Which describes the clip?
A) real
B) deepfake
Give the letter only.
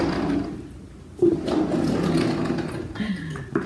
A